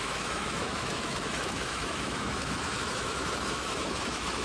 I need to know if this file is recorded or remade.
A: remade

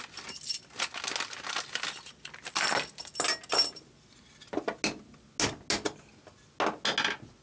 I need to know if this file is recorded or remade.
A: recorded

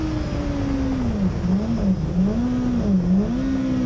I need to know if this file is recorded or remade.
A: recorded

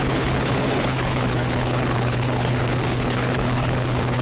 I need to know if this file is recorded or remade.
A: remade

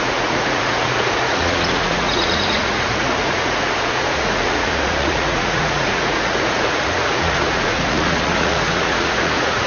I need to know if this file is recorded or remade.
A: remade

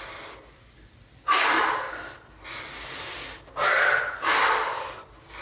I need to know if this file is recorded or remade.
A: recorded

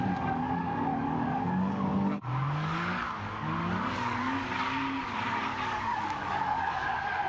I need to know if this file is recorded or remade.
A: remade